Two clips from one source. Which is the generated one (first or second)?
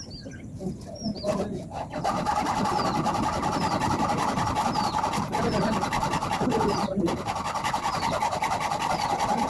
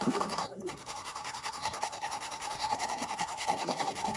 second